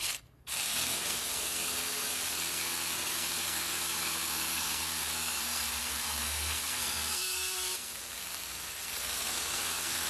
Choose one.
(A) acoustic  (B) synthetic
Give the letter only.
B